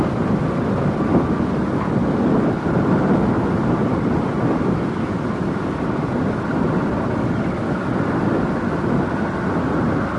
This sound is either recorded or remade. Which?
recorded